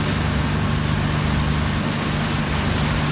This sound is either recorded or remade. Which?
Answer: recorded